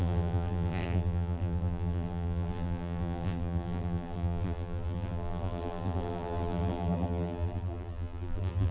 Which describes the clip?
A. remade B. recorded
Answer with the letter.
A